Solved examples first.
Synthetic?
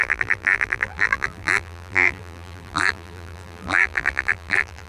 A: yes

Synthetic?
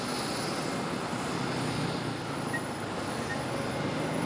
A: no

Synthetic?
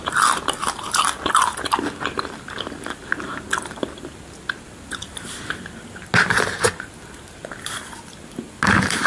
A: no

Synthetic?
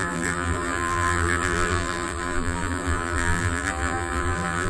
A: yes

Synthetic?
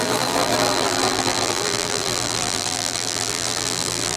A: yes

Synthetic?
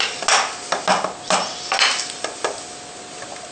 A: no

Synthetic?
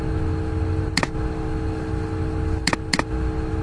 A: no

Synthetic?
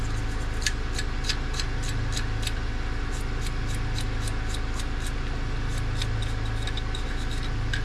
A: no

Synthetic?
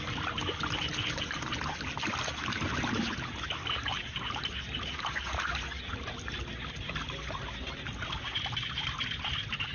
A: no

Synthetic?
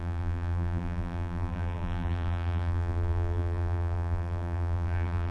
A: yes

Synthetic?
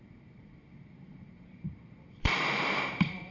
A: yes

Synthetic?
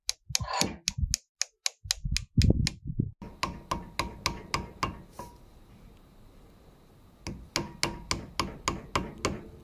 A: no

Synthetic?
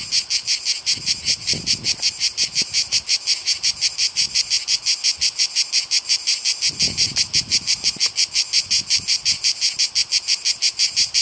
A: no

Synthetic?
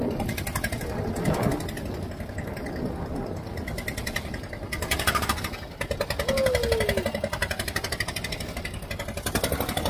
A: no